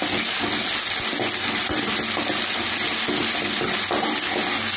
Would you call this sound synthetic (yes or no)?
no